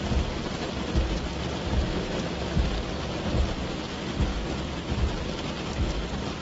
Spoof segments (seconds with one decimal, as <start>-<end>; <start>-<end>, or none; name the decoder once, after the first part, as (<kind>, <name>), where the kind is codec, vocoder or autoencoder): none